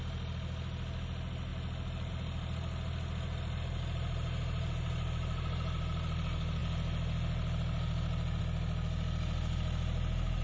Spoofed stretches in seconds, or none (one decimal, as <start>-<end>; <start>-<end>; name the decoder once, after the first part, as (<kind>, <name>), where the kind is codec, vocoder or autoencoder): none